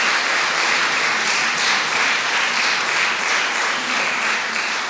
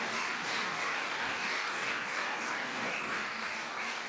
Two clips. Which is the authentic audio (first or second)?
first